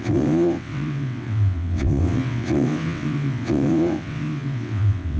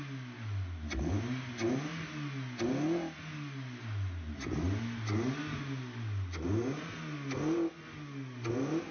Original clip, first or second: second